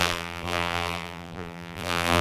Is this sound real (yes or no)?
no